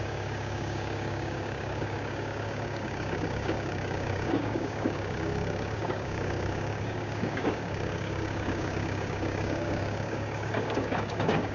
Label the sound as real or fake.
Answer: fake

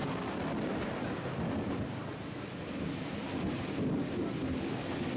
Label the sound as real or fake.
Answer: real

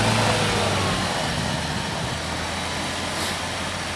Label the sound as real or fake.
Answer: real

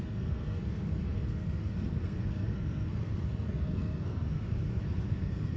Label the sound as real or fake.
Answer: fake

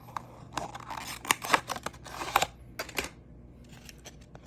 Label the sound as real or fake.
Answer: real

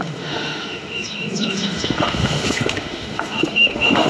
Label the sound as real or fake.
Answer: fake